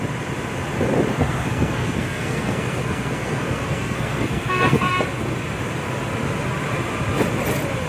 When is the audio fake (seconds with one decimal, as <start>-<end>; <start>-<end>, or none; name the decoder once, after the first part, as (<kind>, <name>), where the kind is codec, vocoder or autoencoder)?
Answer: 1.1-4.9 (codec, SNAC)